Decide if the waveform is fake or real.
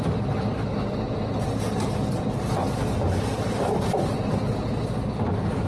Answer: real